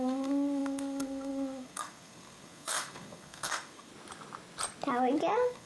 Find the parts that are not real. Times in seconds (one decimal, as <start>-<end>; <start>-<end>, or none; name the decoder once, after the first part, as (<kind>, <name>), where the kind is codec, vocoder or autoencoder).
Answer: 0.0-3.9 (codec, SNAC); 5.3-5.7